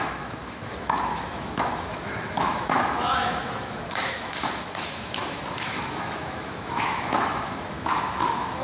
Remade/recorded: remade